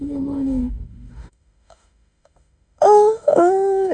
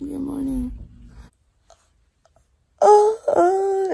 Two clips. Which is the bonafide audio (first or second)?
second